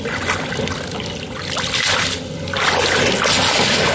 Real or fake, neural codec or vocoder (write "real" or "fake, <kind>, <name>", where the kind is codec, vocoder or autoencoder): real